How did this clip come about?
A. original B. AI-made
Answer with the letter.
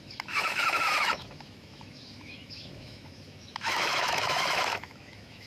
B